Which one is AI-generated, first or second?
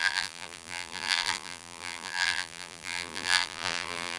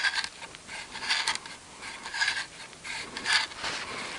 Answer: first